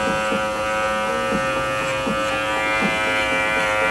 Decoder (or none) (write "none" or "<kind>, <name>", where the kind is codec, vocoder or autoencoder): none